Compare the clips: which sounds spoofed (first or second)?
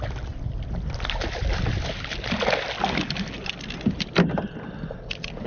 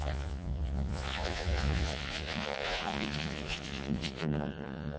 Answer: second